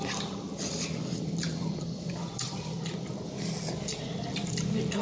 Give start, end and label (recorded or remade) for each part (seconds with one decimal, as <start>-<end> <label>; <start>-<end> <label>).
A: 0.0-5.0 recorded